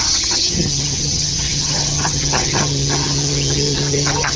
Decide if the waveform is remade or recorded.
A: remade